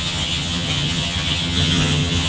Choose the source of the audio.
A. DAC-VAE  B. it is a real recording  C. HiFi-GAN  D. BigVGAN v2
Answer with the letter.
C